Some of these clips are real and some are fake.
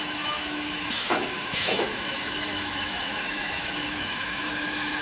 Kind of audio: fake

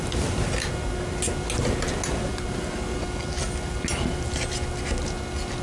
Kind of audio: real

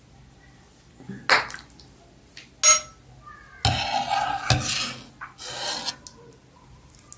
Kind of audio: real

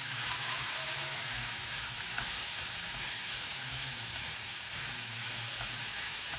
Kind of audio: fake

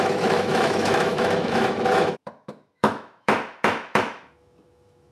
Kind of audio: fake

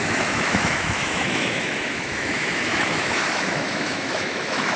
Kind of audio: fake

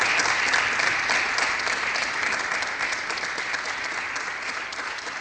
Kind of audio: real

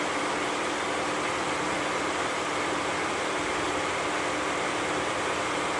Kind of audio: real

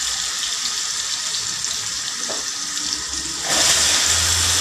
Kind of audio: real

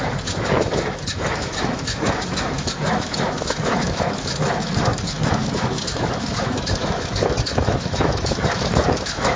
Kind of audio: fake